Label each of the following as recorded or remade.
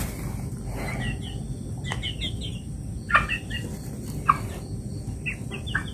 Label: recorded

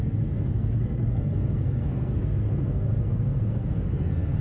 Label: remade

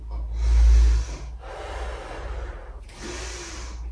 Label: recorded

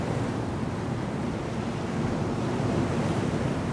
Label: recorded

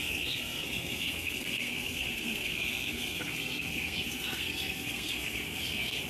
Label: remade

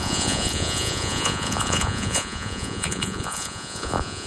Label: remade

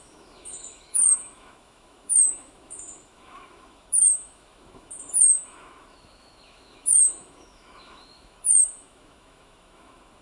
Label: remade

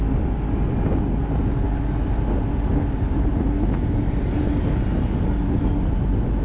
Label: recorded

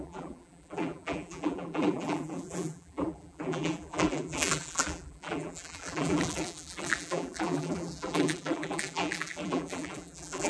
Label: remade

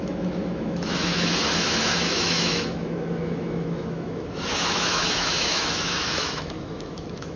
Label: remade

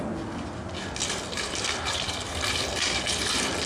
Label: recorded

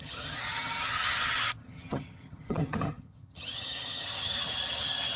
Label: remade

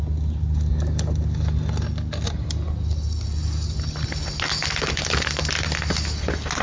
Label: recorded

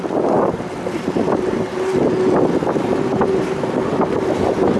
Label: recorded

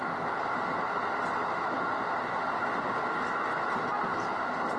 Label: recorded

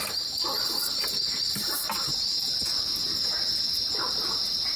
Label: recorded